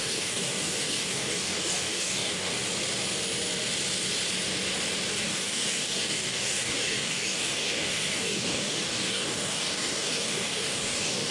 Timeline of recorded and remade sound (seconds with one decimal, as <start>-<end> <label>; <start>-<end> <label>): 0.0-2.5 remade; 2.5-5.2 recorded; 5.2-11.3 remade